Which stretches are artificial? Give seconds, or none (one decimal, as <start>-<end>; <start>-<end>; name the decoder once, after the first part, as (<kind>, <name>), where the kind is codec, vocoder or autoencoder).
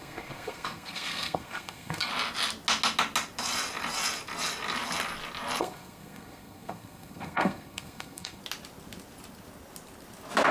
0.0-2.1 (codec, SNAC); 5.6-8.4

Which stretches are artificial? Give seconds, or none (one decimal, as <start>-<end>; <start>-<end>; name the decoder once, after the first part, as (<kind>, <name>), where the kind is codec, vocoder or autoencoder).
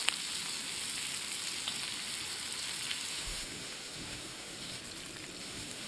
3.1-4.8 (autoencoder, DAC-VAE); 5.4-5.9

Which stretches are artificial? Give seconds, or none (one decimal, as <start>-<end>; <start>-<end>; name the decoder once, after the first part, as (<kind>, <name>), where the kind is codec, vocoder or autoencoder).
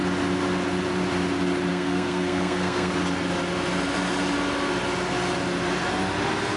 1.7-2.9 (codec, SNAC)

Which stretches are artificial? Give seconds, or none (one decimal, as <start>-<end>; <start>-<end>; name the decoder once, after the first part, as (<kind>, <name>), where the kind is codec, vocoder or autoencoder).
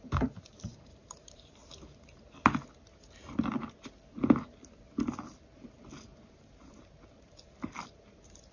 0.0-1.6 (vocoder, BigVGAN v2); 6.3-8.5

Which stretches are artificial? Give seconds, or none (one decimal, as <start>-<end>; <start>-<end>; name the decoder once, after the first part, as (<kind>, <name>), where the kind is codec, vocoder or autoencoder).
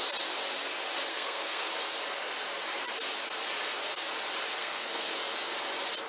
1.1-1.7 (codec, SNAC); 4.6-5.2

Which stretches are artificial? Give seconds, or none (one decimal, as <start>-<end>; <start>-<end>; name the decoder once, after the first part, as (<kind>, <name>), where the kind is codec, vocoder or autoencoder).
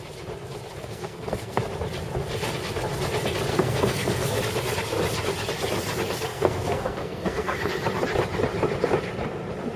0.8-1.6 (codec, SNAC); 3.5-4.4; 6.3-7.7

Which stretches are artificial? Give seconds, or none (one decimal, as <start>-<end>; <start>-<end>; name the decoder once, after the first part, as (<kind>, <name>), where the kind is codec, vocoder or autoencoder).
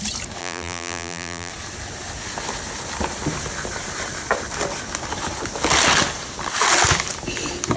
0.4-1.5 (vocoder, BigVGAN v2)